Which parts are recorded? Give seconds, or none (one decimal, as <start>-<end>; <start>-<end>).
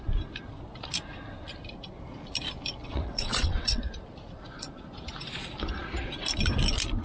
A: 0.0-2.8; 3.8-7.0